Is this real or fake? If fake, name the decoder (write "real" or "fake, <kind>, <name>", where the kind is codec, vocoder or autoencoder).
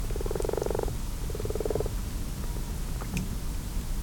real